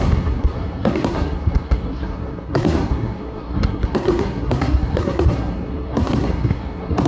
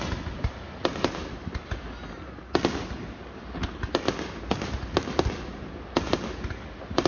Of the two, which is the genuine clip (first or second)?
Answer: second